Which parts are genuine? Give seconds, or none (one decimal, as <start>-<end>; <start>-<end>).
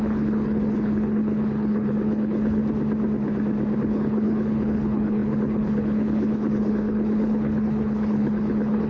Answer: 2.6-3.8